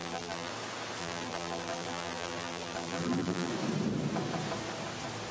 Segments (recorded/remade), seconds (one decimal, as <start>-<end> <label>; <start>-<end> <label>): 0.0-0.5 remade; 0.5-1.0 recorded; 1.0-3.5 remade; 3.5-5.3 recorded